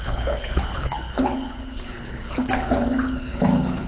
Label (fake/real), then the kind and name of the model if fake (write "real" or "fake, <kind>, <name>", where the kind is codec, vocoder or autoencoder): fake, codec, HILCodec